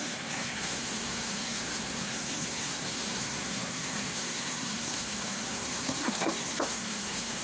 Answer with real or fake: fake